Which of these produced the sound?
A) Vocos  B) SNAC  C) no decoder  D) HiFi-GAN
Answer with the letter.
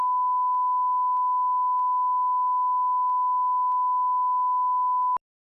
C